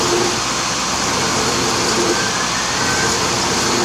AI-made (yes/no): no